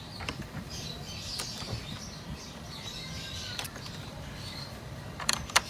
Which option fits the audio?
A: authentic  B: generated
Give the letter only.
B